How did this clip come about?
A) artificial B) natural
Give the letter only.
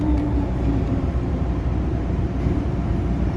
A